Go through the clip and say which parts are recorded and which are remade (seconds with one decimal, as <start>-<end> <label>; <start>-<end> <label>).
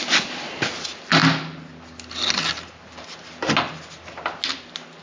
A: 0.0-5.0 recorded